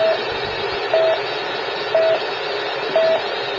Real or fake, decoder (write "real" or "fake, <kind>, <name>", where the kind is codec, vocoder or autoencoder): real